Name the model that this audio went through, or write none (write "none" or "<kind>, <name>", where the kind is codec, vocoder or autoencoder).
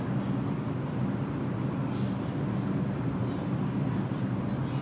none